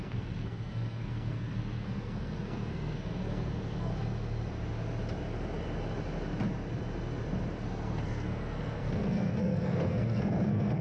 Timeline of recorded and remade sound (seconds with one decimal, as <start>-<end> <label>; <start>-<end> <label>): 0.0-3.9 remade; 3.9-7.6 recorded; 7.6-10.8 remade